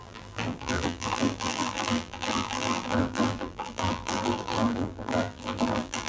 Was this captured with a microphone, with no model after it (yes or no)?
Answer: no